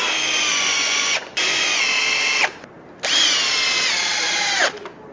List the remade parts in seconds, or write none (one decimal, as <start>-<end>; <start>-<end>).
0.5-1.8

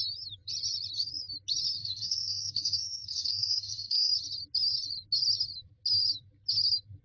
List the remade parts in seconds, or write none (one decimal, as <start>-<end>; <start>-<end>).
1.8-4.1

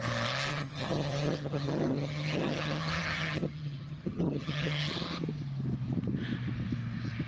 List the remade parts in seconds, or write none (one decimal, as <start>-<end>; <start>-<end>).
0.5-4.9

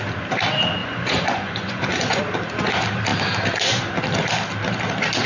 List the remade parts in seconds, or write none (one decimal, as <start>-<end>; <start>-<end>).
0.8-2.2